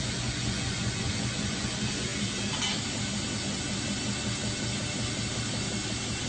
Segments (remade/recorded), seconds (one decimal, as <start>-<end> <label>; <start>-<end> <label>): 0.0-2.1 remade; 2.1-6.3 recorded